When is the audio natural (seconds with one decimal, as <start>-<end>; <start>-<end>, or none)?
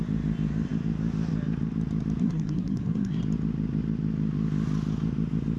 0.0-2.2; 3.2-5.6